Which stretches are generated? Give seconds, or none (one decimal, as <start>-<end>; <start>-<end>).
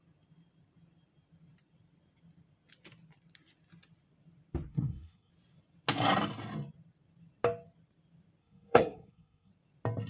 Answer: 4.7-5.3; 8.4-9.5